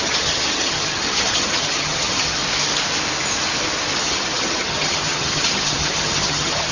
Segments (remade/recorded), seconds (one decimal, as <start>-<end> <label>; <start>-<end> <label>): 0.0-2.4 remade; 2.4-4.0 recorded; 4.0-6.7 remade